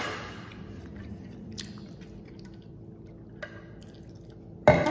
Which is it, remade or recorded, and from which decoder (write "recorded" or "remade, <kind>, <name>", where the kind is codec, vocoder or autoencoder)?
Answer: recorded